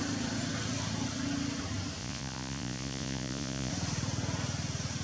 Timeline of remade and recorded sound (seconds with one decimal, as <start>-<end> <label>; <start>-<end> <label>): 0.0-2.0 recorded; 2.0-3.7 remade; 3.7-5.0 recorded